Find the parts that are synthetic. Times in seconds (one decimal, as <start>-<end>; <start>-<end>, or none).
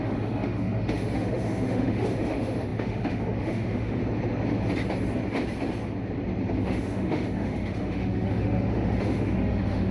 0.0-4.0; 6.6-9.9